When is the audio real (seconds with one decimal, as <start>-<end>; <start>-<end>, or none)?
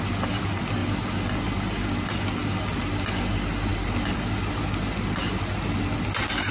0.0-6.5